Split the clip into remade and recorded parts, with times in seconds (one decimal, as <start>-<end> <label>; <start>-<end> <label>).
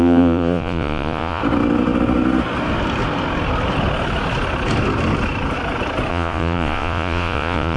0.0-1.4 remade; 1.4-6.1 recorded; 6.1-7.8 remade